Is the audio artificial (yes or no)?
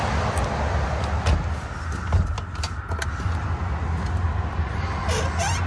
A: no